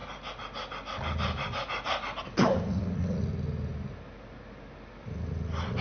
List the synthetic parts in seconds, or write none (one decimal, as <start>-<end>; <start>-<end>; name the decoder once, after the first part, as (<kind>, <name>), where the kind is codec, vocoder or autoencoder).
none